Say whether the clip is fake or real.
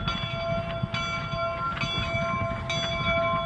real